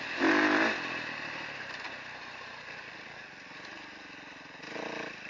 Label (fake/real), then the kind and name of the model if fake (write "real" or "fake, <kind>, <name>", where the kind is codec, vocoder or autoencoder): real